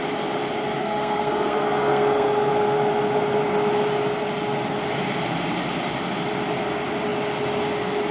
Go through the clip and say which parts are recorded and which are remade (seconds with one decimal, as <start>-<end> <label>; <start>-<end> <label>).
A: 0.0-0.8 recorded; 0.8-2.5 remade; 2.5-8.1 recorded